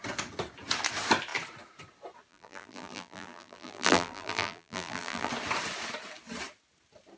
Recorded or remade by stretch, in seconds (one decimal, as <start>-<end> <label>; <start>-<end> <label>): 0.0-2.3 recorded; 2.3-5.3 remade; 5.3-7.2 recorded